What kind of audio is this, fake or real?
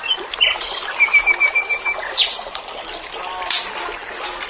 real